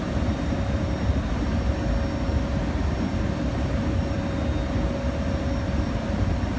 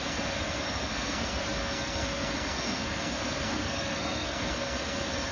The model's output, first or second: second